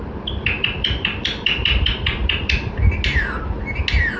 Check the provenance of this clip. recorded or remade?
recorded